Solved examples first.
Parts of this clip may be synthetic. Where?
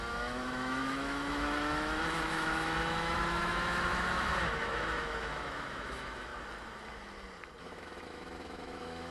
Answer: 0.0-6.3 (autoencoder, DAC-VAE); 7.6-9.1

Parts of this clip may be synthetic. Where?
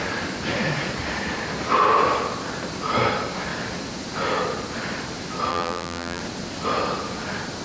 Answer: 5.5-6.2 (vocoder, BigVGAN v2)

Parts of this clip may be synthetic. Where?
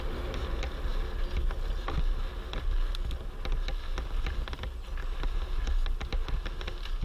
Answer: none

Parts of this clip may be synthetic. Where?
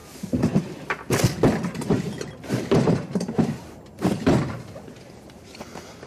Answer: 0.0-0.6 (vocoder, BigVGAN v2); 1.7-5.4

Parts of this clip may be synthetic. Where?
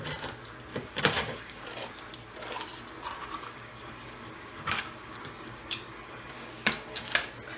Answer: 0.7-1.9 (codec, DAC); 3.2-7.1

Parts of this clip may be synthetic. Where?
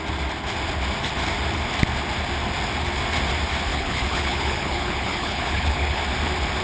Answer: 3.7-6.0 (codec, HILCodec)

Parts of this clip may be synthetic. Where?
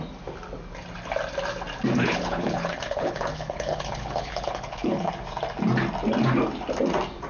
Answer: 2.0-5.1 (codec, HILCodec)